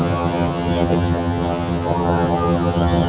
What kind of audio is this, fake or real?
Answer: fake